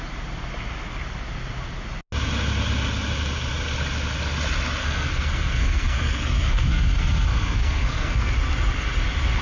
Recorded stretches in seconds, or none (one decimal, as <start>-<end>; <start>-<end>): 0.0-4.8; 8.3-9.4